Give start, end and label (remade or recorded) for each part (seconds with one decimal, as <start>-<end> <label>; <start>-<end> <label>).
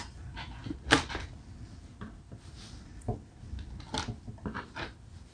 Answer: 0.0-5.3 recorded